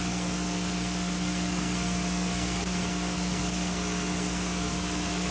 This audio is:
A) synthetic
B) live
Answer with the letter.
A